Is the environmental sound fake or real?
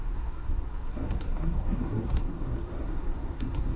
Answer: fake